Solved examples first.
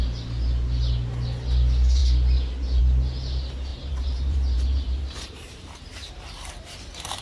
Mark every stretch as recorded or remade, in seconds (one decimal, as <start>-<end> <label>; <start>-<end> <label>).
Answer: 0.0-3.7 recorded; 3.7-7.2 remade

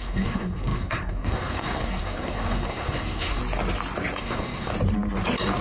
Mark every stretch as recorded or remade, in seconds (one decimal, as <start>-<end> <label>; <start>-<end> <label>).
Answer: 0.0-3.4 remade; 3.4-4.2 recorded; 4.2-4.7 remade; 4.7-5.6 recorded

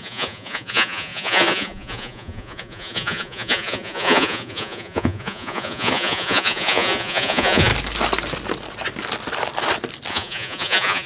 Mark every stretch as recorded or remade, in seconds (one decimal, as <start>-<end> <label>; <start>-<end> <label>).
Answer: 0.0-7.7 remade; 7.7-10.1 recorded; 10.1-11.1 remade

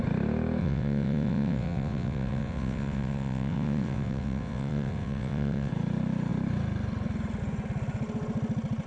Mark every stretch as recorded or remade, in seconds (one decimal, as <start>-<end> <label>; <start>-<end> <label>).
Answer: 0.0-0.6 recorded; 0.6-5.7 remade; 5.7-8.9 recorded

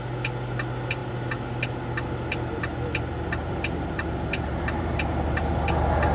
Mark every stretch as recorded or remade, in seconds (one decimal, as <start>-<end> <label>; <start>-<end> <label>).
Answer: 0.0-3.4 recorded; 3.4-5.5 remade; 5.5-6.1 recorded

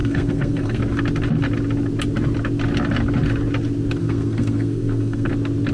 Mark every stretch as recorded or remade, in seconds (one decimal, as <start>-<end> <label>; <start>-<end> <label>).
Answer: 0.0-0.8 remade; 0.8-4.0 recorded; 4.0-5.3 remade; 5.3-5.7 recorded

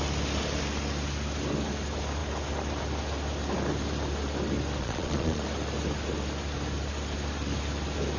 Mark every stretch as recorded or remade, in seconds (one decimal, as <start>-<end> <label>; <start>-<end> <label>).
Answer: 0.0-4.8 recorded; 4.8-5.4 remade; 5.4-8.2 recorded